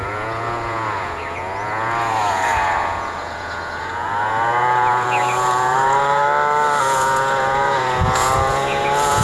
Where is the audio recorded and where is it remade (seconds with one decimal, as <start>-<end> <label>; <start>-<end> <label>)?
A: 0.0-6.2 remade; 6.2-6.8 recorded; 6.8-9.2 remade